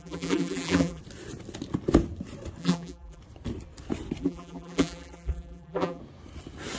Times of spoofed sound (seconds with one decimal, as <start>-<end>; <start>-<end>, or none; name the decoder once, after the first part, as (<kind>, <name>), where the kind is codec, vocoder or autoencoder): 0.0-1.0 (vocoder, BigVGAN v2); 2.6-3.2; 4.2-6.0